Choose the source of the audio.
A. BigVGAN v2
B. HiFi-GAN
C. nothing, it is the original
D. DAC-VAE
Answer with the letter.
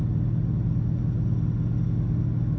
C